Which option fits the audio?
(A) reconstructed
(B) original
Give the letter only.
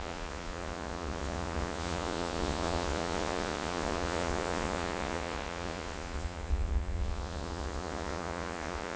A